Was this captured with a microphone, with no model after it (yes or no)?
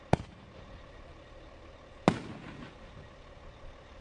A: yes